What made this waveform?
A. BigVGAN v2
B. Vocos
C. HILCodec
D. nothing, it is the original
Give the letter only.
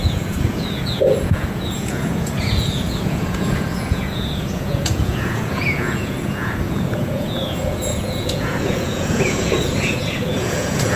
B